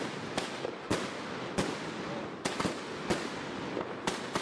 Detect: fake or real real